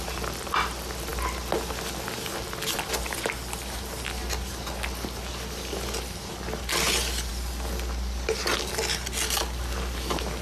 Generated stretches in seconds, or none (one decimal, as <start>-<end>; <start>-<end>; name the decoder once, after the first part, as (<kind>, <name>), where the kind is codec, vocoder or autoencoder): none